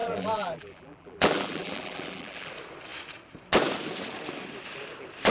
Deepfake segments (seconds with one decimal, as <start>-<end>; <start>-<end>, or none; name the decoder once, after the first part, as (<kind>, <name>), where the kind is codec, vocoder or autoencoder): 0.0-2.5 (vocoder, BigVGAN v2)